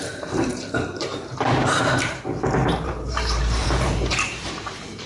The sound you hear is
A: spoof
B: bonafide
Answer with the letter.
A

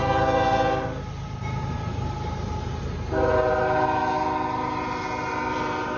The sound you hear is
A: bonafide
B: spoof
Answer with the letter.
A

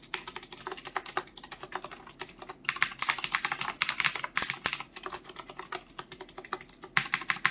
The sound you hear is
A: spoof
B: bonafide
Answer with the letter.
B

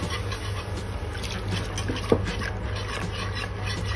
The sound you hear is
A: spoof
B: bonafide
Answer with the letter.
B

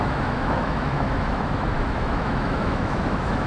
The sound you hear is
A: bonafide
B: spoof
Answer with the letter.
B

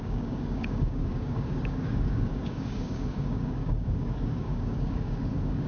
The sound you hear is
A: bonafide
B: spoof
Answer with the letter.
B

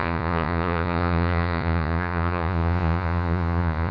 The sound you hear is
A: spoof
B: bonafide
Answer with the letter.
A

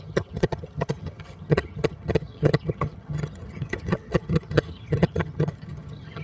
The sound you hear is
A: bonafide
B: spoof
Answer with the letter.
B